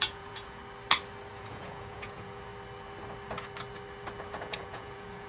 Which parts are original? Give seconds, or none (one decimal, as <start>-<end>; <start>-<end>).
0.6-1.3; 2.5-4.2